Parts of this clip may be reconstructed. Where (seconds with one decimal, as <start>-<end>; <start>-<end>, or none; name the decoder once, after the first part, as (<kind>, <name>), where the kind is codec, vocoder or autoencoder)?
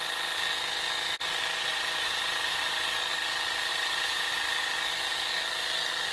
1.7-2.6 (vocoder, BigVGAN v2); 3.7-4.3